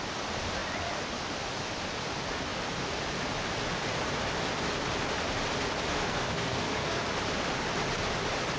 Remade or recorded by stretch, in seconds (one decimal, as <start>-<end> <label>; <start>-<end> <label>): 0.0-5.9 recorded; 5.9-7.0 remade; 7.0-8.6 recorded